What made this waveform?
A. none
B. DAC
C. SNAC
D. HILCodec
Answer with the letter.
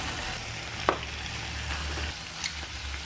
A